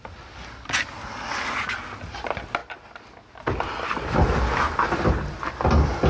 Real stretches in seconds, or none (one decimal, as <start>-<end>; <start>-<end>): 0.0-6.1

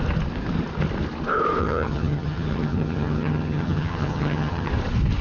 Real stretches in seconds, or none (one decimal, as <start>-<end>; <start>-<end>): 0.0-1.6; 4.7-5.2

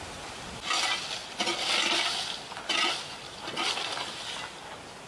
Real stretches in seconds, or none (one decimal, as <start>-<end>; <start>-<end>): 0.0-5.1

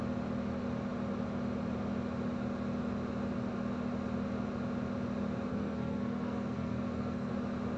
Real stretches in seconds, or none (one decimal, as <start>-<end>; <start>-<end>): 0.0-5.5; 7.3-7.8

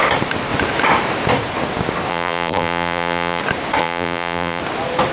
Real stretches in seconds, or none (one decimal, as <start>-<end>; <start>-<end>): 0.0-2.1; 3.4-3.8; 4.6-5.1

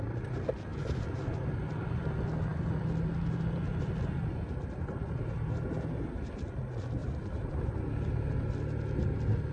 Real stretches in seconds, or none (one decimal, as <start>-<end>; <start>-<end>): 0.0-0.7; 1.9-7.0; 7.8-9.5

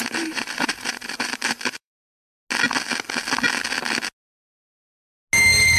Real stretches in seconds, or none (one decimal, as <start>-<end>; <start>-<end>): 1.9-5.8